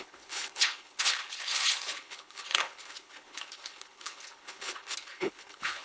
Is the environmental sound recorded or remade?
remade